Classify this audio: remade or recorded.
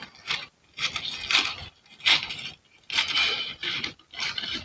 recorded